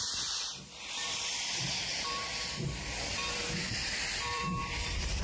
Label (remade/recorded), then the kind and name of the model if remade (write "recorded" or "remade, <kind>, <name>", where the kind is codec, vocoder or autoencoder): remade, vocoder, BigVGAN v2